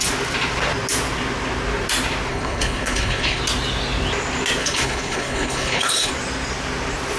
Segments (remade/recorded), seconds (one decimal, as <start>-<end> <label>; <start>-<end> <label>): 0.0-2.3 recorded; 2.3-3.4 remade; 3.4-4.6 recorded; 4.6-6.1 remade; 6.1-7.2 recorded